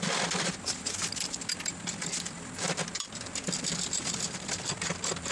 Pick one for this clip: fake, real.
fake